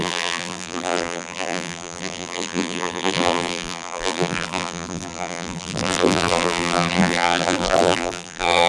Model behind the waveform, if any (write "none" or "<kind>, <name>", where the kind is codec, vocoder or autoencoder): vocoder, BigVGAN v2